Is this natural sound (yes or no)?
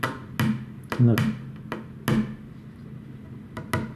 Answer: yes